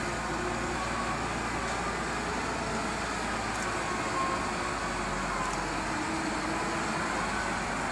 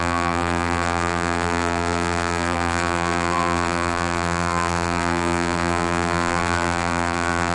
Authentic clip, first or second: first